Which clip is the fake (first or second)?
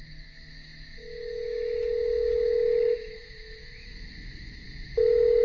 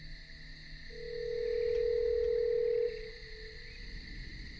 first